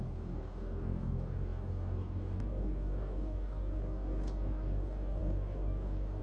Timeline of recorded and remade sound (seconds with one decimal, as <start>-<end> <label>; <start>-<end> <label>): 0.0-6.2 remade